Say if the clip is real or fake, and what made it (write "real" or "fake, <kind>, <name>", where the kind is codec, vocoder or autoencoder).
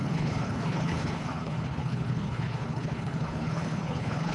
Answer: fake, codec, HILCodec